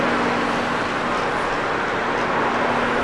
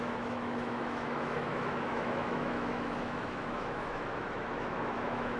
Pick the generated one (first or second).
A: second